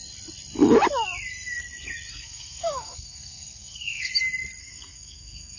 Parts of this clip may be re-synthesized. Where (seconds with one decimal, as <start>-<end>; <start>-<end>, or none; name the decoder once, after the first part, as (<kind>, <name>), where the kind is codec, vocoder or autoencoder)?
2.1-4.1 (codec, SNAC); 4.6-5.6